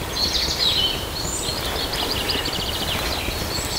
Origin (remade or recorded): recorded